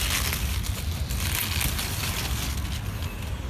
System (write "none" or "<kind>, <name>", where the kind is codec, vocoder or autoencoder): none